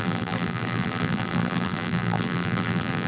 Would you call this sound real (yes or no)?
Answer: no